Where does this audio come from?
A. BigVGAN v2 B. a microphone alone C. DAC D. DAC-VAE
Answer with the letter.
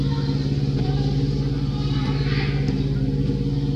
B